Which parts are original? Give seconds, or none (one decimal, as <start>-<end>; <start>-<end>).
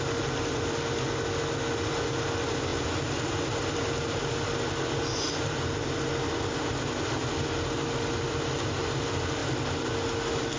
0.0-10.6